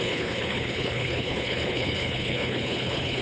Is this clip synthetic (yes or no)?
yes